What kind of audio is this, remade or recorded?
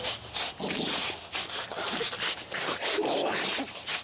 recorded